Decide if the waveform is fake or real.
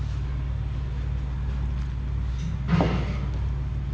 real